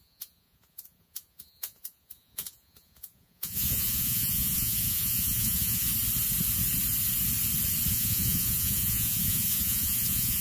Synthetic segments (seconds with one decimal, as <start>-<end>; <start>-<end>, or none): 0.0-5.9; 7.9-10.4